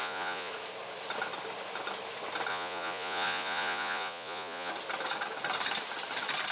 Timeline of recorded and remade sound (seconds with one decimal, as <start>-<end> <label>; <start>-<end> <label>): 0.0-0.5 remade; 0.5-2.5 recorded; 2.5-4.7 remade; 4.7-6.5 recorded

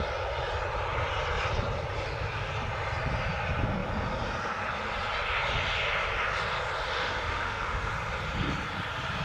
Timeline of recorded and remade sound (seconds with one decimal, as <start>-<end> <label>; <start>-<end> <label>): 0.0-7.0 recorded; 7.0-7.9 remade; 7.9-9.2 recorded

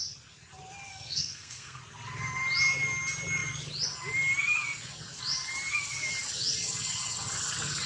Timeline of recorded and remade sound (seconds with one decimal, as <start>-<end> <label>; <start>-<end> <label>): 0.0-0.9 recorded; 0.9-1.8 remade; 1.8-7.9 recorded

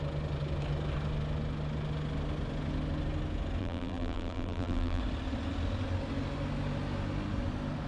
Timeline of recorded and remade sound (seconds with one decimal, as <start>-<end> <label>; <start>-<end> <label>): 0.0-3.6 recorded; 3.6-5.0 remade; 5.0-7.9 recorded

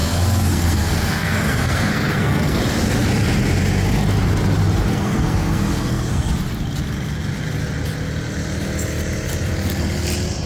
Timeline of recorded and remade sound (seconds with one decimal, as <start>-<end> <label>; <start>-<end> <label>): 0.0-2.6 remade; 2.6-4.9 recorded; 4.9-6.3 remade; 6.3-10.5 recorded

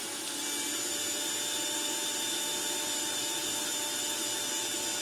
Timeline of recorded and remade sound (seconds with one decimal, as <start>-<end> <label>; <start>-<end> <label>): 0.0-5.0 recorded

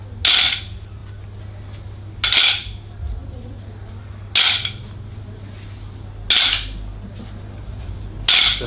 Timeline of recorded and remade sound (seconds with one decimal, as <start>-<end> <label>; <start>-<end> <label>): 0.0-8.7 recorded